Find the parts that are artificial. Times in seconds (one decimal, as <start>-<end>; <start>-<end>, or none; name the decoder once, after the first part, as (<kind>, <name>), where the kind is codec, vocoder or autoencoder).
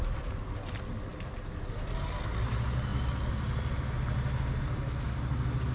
none